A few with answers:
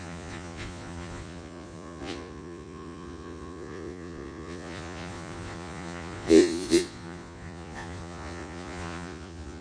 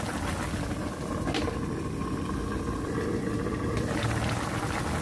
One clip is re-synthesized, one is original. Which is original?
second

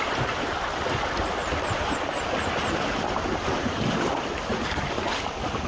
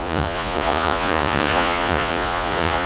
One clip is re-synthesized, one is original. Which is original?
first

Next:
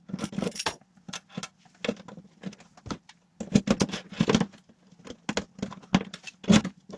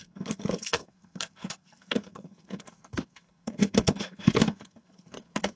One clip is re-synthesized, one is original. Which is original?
first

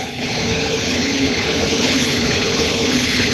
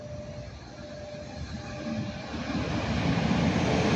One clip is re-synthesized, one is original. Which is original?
second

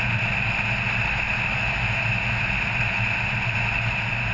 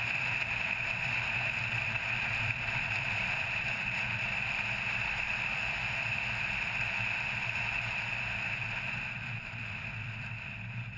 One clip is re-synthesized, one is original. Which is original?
first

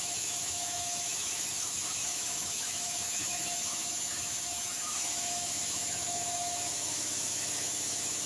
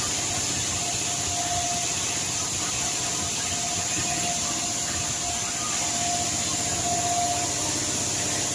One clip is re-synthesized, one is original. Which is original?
second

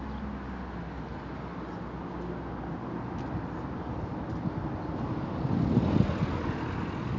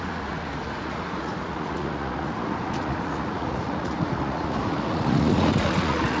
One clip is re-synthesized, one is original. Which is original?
first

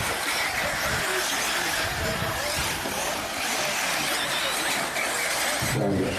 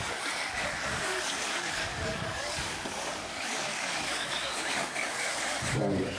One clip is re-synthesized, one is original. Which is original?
first